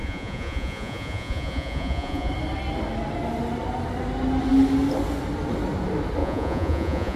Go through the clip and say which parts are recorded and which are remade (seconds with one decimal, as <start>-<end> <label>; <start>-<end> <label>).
0.0-2.3 remade; 2.3-6.2 recorded; 6.2-7.2 remade